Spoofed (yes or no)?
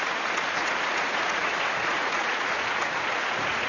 yes